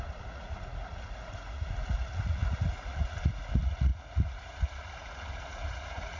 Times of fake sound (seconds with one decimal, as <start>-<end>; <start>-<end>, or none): 0.0-6.2